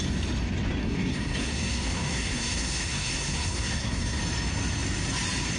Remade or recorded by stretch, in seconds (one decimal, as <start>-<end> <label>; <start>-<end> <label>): 0.0-0.8 recorded; 0.8-4.2 remade; 4.2-5.6 recorded